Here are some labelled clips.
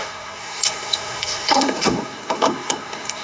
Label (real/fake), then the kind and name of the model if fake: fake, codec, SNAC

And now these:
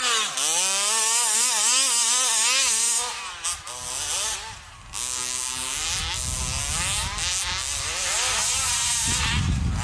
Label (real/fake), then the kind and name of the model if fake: real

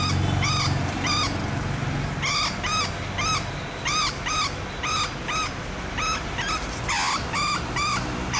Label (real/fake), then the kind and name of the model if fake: real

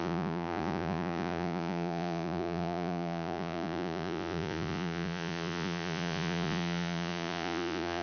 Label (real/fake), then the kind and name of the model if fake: fake, vocoder, Vocos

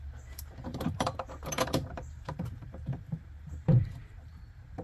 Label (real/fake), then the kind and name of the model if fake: fake, vocoder, BigVGAN v2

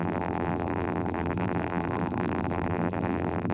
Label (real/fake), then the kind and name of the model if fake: fake, vocoder, BigVGAN v2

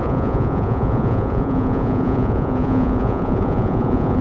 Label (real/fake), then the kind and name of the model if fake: fake, vocoder, Vocos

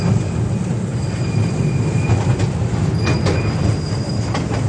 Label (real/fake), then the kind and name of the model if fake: real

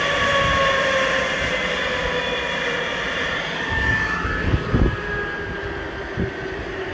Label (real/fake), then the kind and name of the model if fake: real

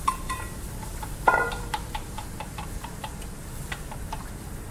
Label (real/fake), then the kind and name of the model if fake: fake, vocoder, BigVGAN v2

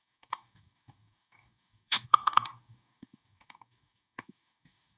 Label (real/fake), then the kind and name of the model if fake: fake, codec, DAC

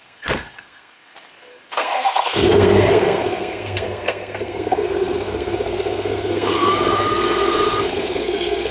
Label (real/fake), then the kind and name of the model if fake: fake, codec, SNAC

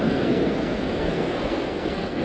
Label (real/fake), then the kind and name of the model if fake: fake, codec, SNAC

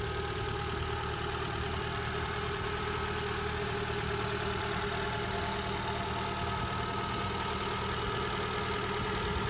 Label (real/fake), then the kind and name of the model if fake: real